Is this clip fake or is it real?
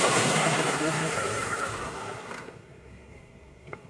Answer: fake